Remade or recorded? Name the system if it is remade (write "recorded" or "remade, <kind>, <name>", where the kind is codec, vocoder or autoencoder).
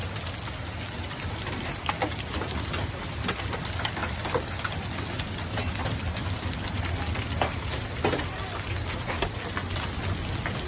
recorded